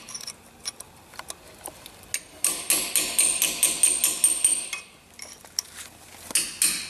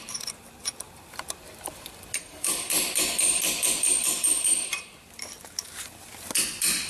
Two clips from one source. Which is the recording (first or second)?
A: first